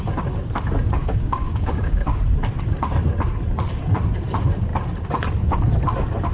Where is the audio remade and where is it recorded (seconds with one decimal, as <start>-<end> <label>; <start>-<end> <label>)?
0.0-1.0 recorded; 1.0-2.2 remade; 2.2-6.3 recorded